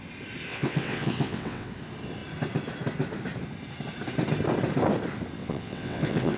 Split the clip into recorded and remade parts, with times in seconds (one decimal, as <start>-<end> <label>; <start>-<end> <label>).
0.0-0.5 recorded; 0.5-1.7 remade; 1.7-5.4 recorded; 5.4-6.4 remade